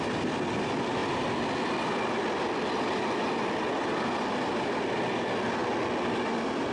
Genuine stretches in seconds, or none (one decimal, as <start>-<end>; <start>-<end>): 0.0-6.7